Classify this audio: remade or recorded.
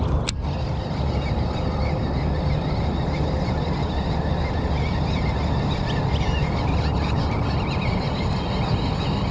recorded